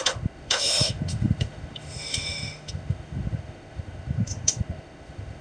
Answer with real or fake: fake